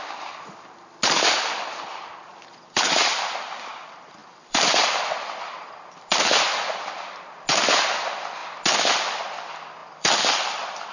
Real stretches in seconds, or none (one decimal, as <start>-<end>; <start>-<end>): 0.0-2.3; 3.4-4.2; 4.8-9.8